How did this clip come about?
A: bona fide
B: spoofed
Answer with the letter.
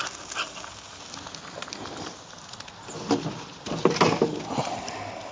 A